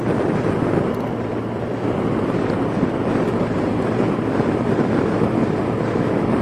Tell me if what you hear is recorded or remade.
remade